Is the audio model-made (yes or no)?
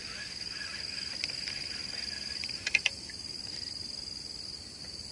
no